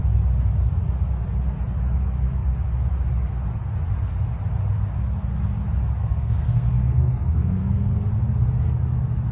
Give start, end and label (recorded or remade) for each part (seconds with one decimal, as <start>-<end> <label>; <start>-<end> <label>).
0.0-6.0 recorded; 6.0-8.0 remade; 8.0-9.3 recorded